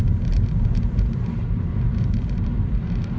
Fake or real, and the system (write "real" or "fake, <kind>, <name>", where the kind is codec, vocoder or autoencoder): fake, vocoder, BigVGAN v2